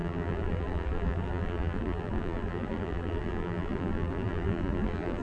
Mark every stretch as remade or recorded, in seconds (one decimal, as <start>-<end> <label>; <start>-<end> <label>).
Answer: 0.0-5.2 remade